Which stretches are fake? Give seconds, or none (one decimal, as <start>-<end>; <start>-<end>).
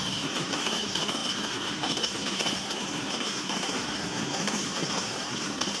0.0-5.8